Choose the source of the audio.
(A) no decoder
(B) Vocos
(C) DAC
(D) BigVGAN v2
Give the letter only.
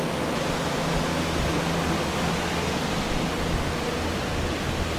A